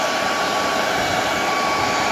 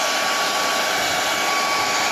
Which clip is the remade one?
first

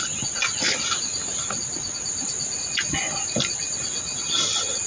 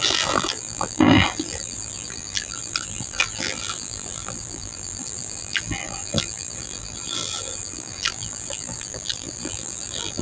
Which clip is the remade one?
second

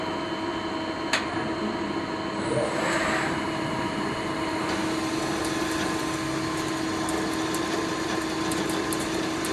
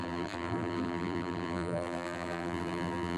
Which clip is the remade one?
second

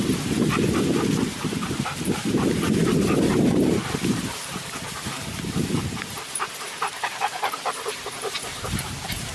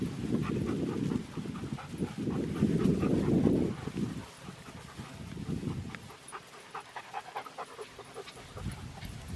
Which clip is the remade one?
first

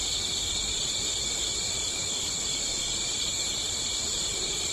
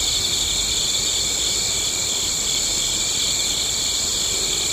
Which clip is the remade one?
first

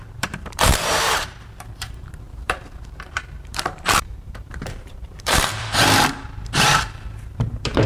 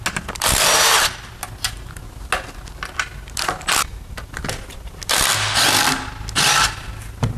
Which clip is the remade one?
first